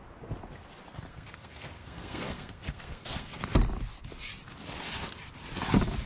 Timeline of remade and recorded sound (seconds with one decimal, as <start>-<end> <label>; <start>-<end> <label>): 0.0-1.1 recorded; 1.1-3.4 remade; 3.4-6.1 recorded